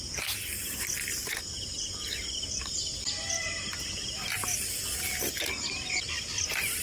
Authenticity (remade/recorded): recorded